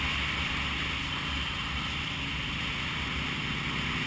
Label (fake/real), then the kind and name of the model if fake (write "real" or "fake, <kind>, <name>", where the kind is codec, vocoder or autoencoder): real